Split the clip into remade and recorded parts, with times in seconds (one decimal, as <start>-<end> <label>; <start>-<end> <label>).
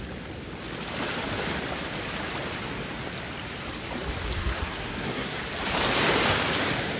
0.0-4.4 recorded; 4.4-5.4 remade; 5.4-7.0 recorded